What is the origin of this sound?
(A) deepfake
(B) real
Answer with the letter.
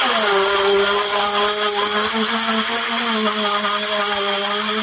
B